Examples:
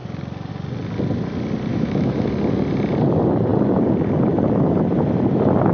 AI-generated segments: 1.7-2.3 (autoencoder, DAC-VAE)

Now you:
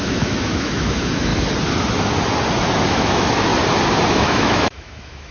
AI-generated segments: 0.0-1.3 (autoencoder, DAC-VAE); 2.9-3.5; 4.1-5.3

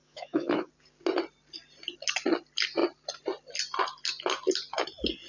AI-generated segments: 0.0-0.7 (autoencoder, DAC-VAE)